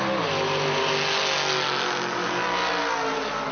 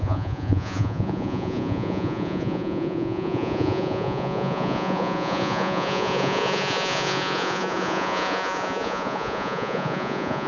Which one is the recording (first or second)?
first